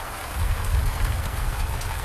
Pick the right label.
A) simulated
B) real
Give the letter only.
A